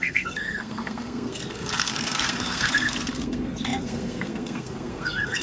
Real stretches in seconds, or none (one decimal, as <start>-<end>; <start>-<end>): none